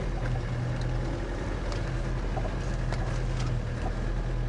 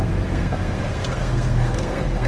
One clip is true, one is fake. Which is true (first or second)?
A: first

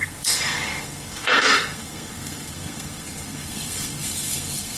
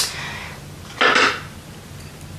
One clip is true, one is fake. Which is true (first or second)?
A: second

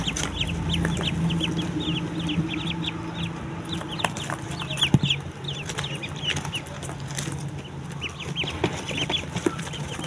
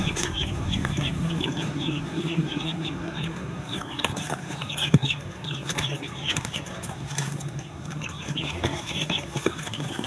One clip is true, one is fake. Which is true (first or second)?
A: first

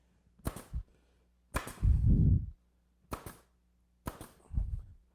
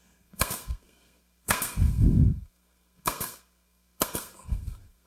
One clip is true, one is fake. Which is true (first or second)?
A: first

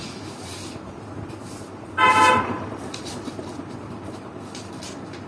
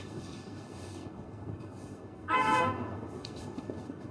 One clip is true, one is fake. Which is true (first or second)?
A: first